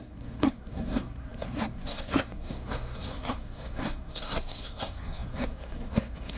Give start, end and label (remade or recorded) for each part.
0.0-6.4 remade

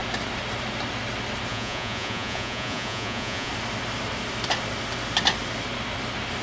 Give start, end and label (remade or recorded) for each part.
0.0-1.5 recorded; 1.5-3.5 remade; 3.5-6.4 recorded

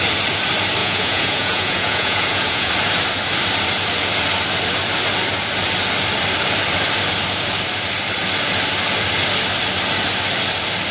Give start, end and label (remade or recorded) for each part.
0.0-0.8 recorded; 0.8-2.7 remade; 2.7-10.9 recorded